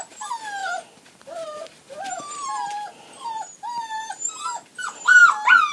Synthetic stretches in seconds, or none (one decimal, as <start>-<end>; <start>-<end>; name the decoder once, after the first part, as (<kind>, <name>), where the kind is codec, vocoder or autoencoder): 0.6-2.0 (vocoder, BigVGAN v2); 2.4-4.3